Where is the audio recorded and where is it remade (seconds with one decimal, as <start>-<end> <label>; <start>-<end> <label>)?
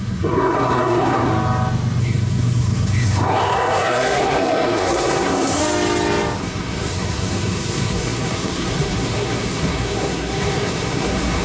0.0-1.3 remade; 1.3-2.0 recorded; 2.0-5.6 remade; 5.6-6.4 recorded; 6.4-11.4 remade